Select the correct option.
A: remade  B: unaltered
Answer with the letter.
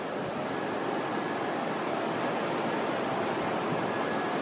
B